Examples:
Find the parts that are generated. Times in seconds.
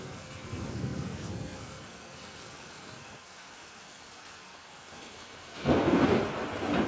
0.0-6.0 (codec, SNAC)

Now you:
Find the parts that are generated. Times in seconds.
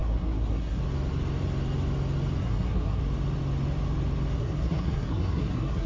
0.0-0.8 (codec, SNAC); 2.4-3.0; 4.4-5.9